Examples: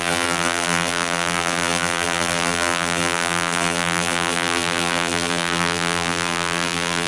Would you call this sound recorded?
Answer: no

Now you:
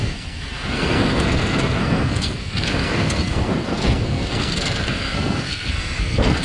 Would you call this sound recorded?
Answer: no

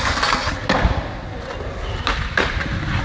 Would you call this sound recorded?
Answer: yes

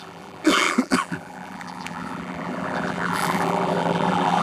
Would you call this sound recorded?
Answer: no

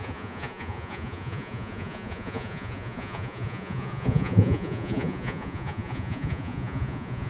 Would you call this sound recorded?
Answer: no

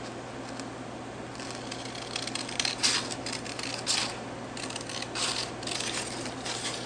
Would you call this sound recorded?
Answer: yes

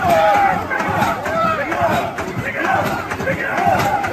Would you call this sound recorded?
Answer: no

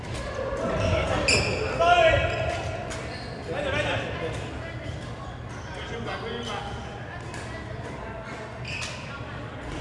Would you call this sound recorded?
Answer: yes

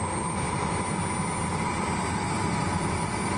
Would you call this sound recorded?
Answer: yes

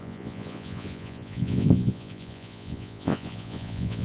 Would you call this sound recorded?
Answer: no